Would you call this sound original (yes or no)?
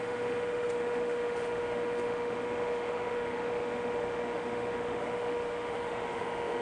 no